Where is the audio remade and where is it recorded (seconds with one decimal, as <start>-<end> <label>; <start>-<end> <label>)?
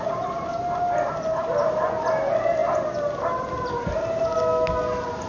0.0-5.3 recorded